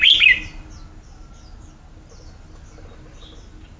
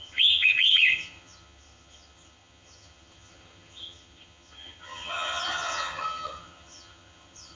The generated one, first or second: second